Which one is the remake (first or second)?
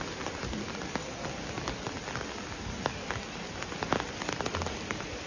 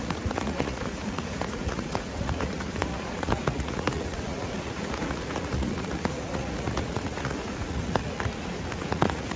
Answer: second